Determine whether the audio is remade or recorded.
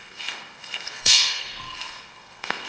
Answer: remade